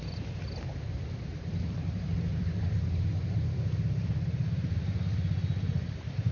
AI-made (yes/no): yes